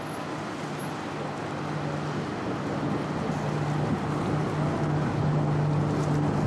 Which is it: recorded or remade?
recorded